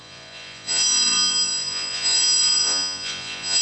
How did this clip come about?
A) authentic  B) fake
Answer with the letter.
B